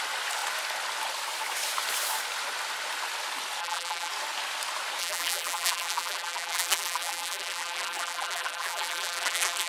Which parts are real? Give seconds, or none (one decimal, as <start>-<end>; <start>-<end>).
0.0-3.6; 4.1-5.0